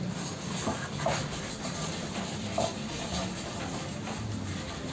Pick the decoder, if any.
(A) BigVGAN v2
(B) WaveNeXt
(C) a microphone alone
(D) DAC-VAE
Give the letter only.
A